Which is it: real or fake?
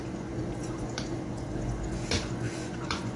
fake